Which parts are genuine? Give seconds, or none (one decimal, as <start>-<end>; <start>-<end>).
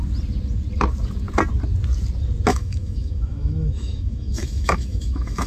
0.0-2.5